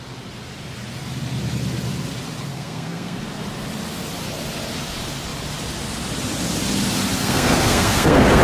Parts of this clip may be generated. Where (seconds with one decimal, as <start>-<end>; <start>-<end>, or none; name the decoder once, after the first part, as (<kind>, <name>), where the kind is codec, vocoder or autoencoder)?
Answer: 2.5-3.2 (codec, SNAC); 7.2-8.4